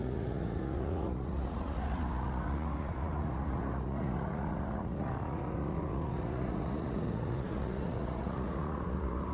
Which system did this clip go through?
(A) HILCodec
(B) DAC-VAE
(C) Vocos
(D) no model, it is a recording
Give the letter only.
C